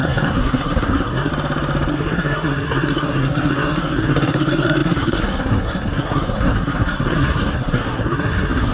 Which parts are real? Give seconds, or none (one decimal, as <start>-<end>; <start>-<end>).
1.3-1.9